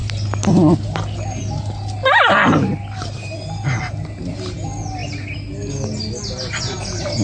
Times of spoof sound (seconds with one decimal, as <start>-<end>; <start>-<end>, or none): none